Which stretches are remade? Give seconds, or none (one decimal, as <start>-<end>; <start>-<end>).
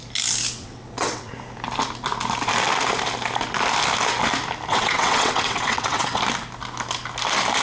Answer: 0.6-1.3; 4.7-6.2